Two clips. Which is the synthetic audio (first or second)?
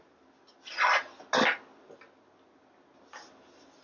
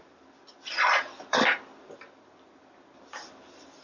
second